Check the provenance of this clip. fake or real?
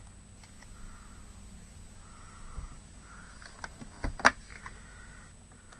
real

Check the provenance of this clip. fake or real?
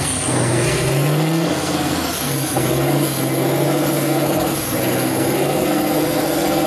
fake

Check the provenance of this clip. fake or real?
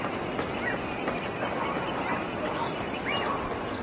real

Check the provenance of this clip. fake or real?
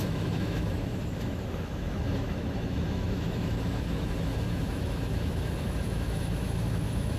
fake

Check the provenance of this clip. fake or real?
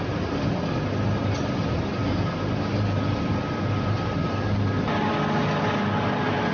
real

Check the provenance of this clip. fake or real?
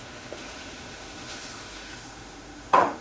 fake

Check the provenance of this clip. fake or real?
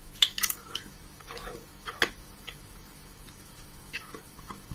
fake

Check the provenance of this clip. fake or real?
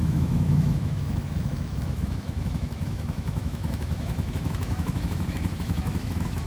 fake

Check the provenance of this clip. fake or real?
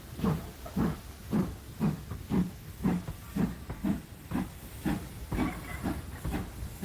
real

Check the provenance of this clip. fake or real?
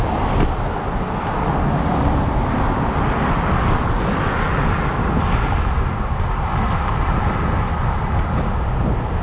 real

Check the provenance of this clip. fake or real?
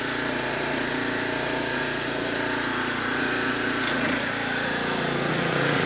fake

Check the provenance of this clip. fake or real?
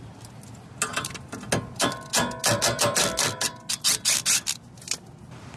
real